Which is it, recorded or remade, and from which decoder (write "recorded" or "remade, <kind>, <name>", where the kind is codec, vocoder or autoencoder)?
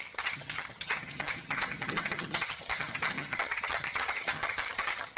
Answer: remade, vocoder, HiFi-GAN